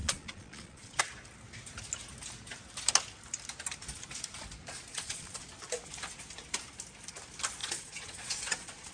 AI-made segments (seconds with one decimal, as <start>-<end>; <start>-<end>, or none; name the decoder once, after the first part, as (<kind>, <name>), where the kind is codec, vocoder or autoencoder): 0.0-1.0 (vocoder, Vocos); 4.9-5.4; 7.6-8.9